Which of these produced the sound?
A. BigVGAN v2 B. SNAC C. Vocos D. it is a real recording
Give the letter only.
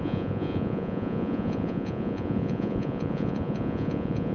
C